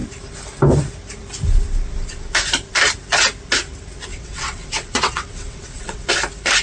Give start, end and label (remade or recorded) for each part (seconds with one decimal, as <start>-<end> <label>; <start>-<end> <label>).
0.0-4.1 recorded; 4.1-6.1 remade; 6.1-6.6 recorded